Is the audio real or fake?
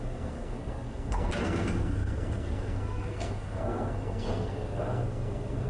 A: fake